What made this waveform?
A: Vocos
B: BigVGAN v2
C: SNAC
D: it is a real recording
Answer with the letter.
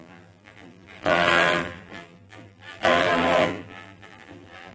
B